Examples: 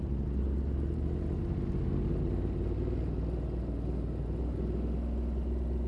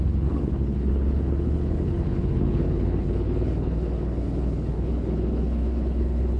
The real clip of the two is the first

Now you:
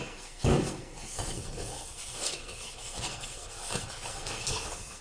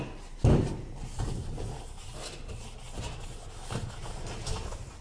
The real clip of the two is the second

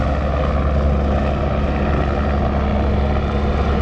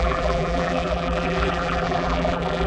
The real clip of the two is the first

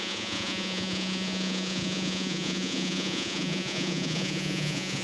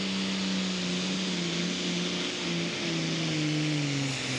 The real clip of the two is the second